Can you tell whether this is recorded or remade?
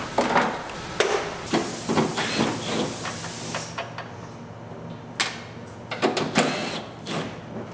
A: recorded